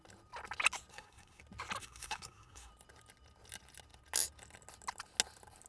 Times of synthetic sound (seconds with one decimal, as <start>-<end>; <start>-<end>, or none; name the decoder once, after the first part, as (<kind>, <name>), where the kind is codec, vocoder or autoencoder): 0.9-1.4 (codec, SNAC); 1.8-2.7